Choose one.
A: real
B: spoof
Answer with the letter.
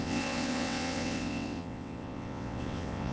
B